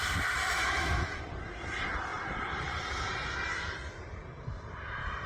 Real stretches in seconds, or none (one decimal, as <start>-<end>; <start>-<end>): 0.0-0.4; 1.2-5.3